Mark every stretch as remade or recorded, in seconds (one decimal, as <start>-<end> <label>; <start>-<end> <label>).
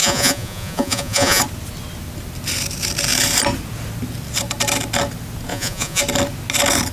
0.0-1.4 remade; 1.4-5.5 recorded; 5.5-6.0 remade; 6.0-6.9 recorded